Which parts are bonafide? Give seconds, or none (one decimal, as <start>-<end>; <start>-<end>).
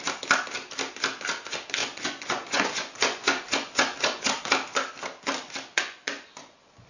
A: 0.0-1.8; 4.2-5.7